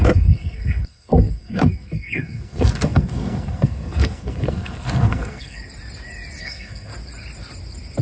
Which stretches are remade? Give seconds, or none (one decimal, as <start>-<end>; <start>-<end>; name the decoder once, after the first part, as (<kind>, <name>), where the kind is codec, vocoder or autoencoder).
0.0-5.6 (codec, SNAC); 6.4-6.9